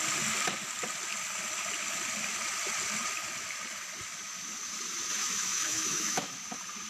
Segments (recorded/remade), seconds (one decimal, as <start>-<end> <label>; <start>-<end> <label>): 0.0-5.2 recorded; 5.2-6.4 remade; 6.4-6.9 recorded